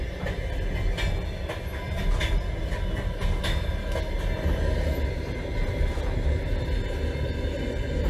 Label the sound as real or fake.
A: real